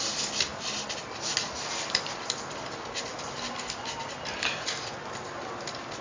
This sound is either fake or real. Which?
real